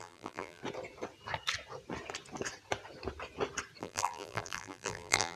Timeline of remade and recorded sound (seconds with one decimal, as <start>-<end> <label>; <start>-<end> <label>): 0.0-0.6 remade; 0.6-3.8 recorded; 3.8-5.4 remade